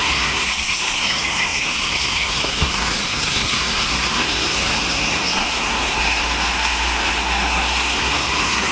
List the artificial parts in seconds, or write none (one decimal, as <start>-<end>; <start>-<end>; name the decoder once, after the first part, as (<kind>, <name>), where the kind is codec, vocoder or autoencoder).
0.0-8.7 (codec, SNAC)